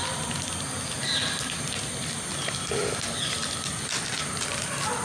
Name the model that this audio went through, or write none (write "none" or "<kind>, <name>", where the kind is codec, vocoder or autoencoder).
none